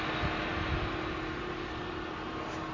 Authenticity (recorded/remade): recorded